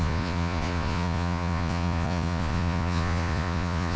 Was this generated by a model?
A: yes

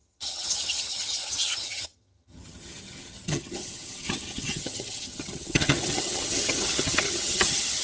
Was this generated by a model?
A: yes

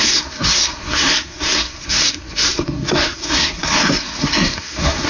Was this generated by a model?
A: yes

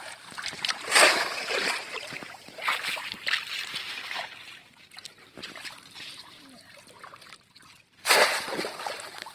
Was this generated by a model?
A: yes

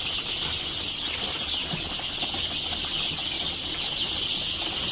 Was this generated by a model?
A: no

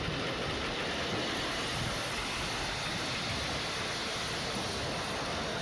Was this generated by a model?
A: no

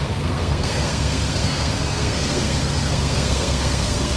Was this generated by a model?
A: yes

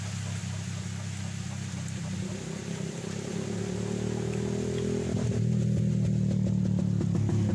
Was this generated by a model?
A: no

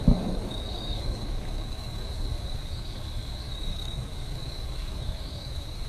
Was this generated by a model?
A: yes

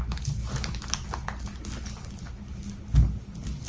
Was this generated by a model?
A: no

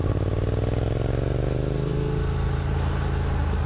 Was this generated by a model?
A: no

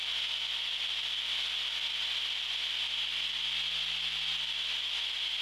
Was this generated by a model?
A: no